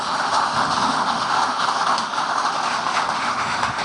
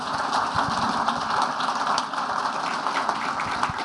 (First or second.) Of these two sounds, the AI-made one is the first